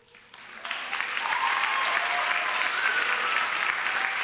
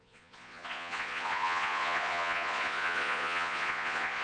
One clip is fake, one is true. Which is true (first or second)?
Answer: first